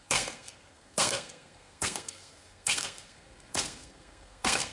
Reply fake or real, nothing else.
fake